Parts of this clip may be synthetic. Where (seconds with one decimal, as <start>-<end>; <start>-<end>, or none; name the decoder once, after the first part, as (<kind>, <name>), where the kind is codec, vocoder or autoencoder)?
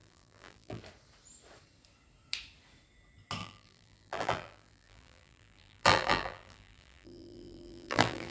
0.0-0.8 (vocoder, BigVGAN v2); 3.4-8.3